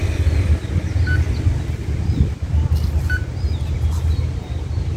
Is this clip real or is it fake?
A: real